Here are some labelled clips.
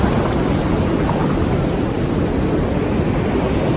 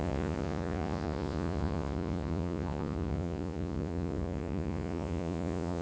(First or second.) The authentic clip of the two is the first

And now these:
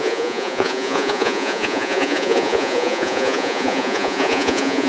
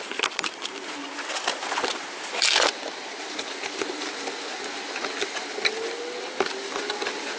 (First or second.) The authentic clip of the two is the second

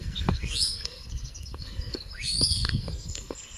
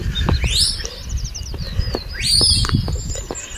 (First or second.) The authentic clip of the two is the second